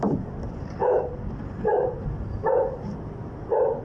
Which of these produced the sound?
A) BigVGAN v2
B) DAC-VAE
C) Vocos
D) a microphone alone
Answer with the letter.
A